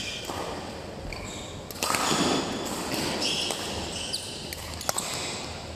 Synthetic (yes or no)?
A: no